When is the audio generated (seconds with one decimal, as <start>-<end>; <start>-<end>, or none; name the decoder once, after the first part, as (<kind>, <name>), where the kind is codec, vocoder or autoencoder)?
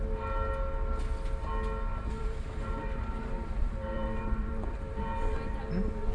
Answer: 1.9-5.6 (vocoder, BigVGAN v2)